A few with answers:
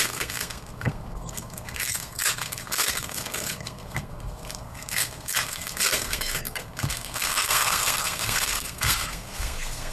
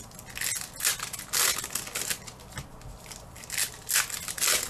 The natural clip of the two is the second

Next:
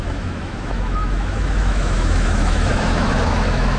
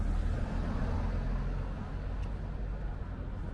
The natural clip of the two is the second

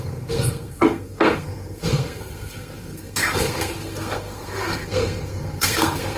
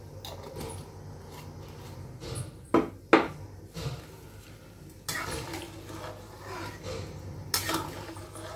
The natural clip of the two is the second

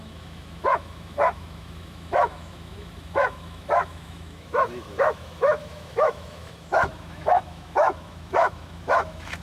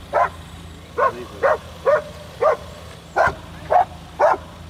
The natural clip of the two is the second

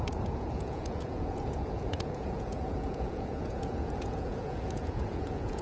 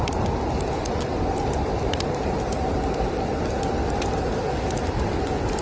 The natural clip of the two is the second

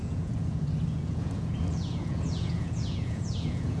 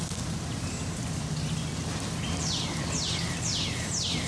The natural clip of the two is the second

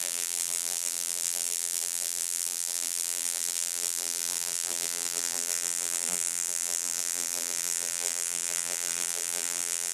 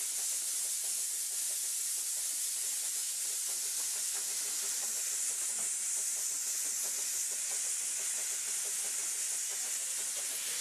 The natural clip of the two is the second